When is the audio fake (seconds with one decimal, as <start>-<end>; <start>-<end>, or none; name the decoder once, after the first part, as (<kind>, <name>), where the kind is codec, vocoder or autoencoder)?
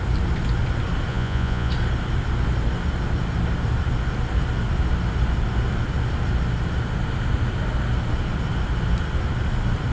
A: 1.1-1.7 (vocoder, Vocos)